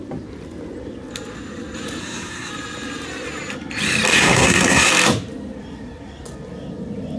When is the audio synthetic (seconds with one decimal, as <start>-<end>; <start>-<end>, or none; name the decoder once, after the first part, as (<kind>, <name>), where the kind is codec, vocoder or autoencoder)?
2.0-2.5 (codec, SNAC); 4.1-4.9